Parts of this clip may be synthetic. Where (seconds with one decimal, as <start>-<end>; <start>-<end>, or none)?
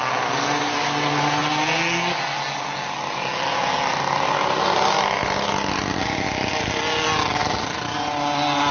none